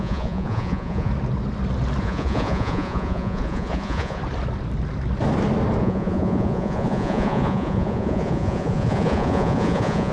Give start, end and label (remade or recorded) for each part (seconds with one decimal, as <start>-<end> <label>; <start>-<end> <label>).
0.0-1.1 remade; 1.1-2.0 recorded; 2.0-4.2 remade; 4.2-5.8 recorded; 5.8-10.1 remade